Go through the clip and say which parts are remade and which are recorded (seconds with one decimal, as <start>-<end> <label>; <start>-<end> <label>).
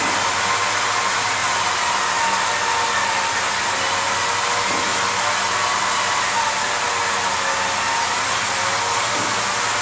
0.0-1.4 recorded; 1.4-1.9 remade; 1.9-9.8 recorded